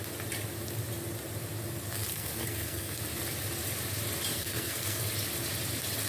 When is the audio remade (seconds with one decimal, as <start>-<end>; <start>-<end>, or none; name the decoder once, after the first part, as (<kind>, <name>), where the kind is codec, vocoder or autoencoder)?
2.1-3.0 (codec, SNAC); 4.3-5.1

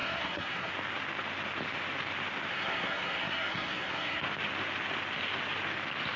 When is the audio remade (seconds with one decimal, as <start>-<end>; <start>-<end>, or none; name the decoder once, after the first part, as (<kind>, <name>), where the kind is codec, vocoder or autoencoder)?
0.0-0.7 (codec, SNAC); 2.5-4.2

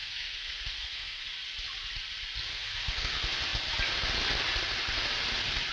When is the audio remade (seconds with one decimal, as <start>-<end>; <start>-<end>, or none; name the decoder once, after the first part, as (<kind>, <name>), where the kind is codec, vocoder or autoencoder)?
0.0-1.2 (codec, SNAC); 2.5-3.1

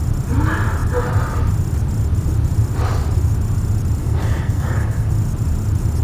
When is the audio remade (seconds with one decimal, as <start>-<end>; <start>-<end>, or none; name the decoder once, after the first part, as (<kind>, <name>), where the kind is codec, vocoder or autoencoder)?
4.0-5.1 (codec, SNAC)

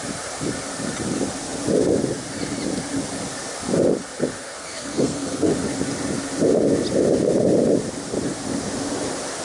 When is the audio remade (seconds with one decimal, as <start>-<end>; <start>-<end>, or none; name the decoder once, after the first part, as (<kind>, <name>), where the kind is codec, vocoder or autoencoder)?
4.4-5.5 (codec, SNAC)

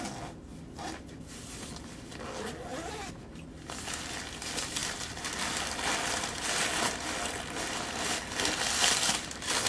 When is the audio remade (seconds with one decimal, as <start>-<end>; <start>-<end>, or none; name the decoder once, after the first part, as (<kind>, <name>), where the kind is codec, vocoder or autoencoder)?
none

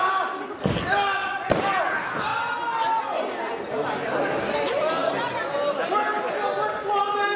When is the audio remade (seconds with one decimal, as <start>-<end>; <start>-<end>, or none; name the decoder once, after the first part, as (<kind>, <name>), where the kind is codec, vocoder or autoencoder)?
none